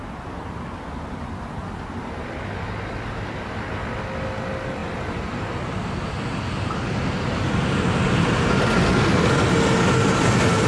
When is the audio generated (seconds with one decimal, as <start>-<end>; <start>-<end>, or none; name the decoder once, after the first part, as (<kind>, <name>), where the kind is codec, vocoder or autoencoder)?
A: none